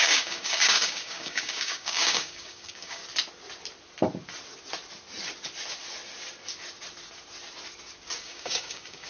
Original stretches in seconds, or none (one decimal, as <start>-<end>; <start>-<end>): 3.0-8.2